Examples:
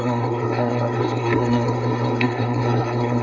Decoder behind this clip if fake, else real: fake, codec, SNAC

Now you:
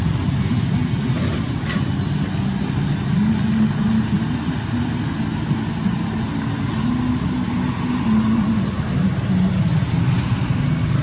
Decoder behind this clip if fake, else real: real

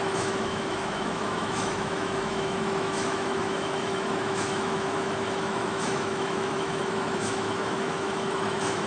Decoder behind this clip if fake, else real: fake, autoencoder, DAC-VAE